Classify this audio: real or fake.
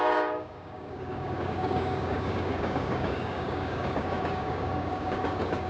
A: fake